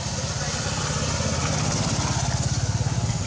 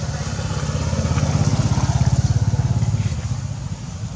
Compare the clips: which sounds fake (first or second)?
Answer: first